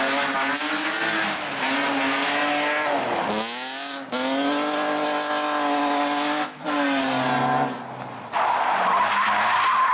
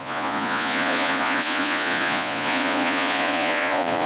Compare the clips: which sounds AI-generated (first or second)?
second